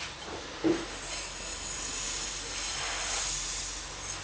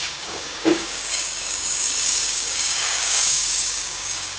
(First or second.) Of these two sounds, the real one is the first